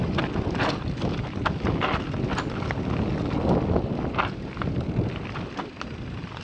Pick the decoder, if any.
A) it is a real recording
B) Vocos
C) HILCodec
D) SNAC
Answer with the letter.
A